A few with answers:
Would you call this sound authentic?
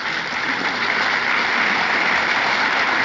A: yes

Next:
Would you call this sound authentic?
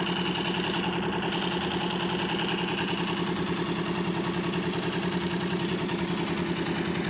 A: yes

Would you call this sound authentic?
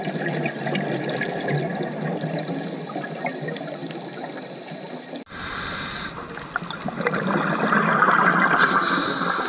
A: yes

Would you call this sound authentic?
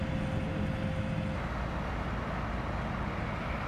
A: yes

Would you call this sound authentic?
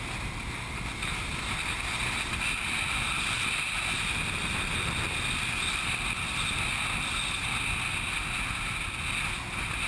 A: yes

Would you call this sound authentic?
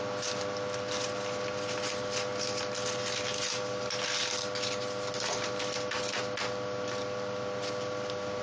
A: yes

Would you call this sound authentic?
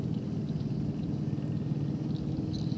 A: yes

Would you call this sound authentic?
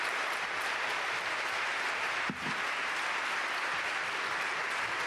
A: yes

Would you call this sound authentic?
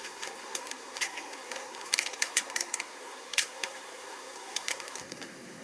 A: no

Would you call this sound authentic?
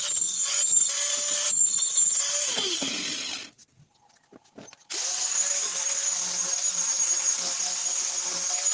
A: yes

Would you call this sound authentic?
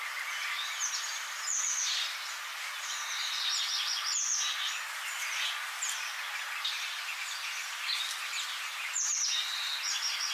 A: yes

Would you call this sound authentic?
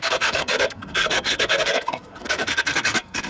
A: no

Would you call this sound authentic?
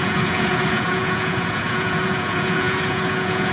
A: no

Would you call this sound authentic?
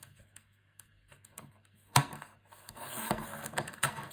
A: no